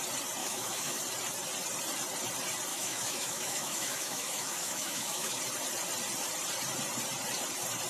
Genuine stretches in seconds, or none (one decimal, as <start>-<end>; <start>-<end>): 0.0-0.4; 1.0-2.7; 5.4-7.9